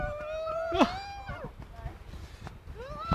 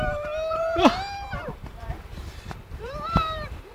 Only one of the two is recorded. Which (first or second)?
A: first